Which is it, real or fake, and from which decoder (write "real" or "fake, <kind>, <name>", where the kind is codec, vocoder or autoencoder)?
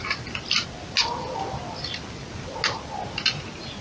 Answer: real